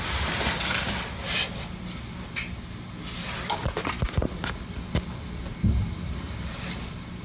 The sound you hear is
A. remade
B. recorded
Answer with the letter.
B